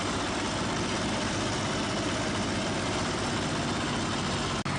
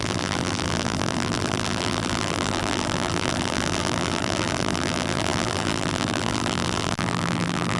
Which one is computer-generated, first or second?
second